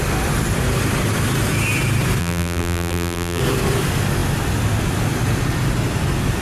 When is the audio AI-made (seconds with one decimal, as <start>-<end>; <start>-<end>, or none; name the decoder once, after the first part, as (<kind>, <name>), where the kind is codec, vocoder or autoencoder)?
2.2-3.4 (vocoder, BigVGAN v2)